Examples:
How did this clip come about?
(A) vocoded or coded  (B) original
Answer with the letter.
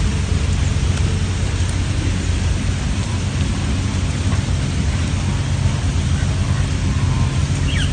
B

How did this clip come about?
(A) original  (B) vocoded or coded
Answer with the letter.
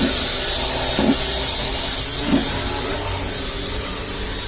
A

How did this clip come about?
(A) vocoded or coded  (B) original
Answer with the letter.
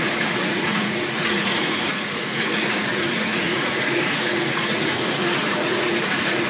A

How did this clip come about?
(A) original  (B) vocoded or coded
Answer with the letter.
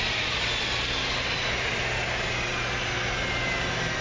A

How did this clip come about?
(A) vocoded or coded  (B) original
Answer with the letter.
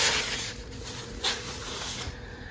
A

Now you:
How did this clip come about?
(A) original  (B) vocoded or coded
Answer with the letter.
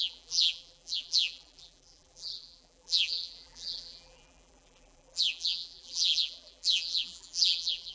B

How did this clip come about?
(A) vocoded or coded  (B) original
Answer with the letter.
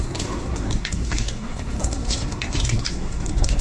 A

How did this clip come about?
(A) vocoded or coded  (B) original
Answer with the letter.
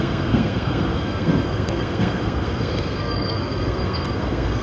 A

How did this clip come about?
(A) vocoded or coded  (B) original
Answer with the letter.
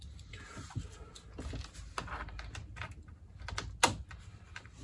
B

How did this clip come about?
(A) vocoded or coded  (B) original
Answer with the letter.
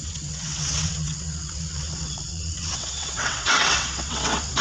A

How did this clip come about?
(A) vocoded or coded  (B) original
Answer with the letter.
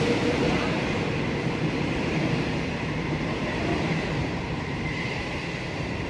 A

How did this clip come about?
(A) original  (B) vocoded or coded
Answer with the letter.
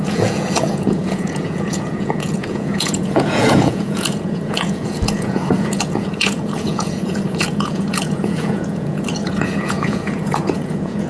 B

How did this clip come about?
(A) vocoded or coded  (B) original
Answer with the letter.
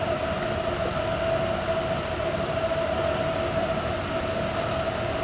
B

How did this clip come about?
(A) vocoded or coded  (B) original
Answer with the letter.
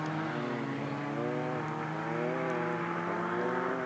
B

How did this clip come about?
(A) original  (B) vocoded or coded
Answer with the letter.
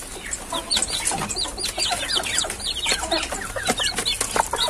A